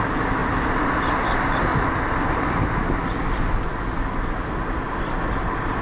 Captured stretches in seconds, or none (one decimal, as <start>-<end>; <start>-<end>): 0.0-0.4; 1.2-1.7; 3.4-5.8